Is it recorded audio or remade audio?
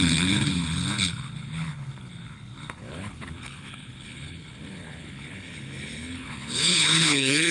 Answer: remade